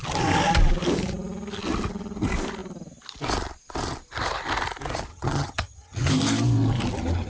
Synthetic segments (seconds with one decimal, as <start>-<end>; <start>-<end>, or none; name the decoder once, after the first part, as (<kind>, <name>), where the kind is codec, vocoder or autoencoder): 5.1-6.1 (vocoder, HiFi-GAN)